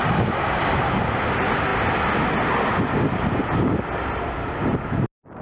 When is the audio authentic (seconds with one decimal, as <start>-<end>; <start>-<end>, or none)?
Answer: 0.0-5.4